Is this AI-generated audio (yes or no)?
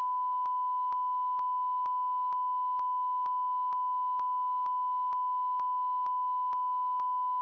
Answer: no